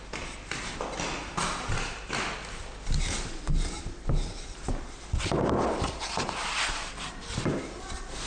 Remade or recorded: recorded